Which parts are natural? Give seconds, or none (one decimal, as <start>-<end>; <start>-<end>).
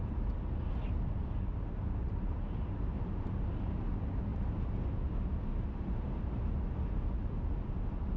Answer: 0.0-8.2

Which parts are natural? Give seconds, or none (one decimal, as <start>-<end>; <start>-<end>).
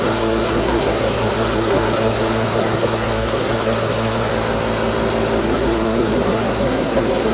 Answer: 4.3-5.4